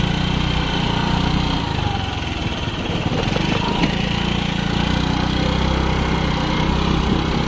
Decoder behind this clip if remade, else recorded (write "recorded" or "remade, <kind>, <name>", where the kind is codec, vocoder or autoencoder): recorded